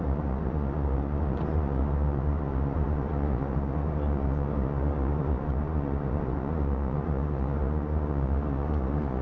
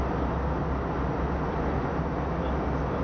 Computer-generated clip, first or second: first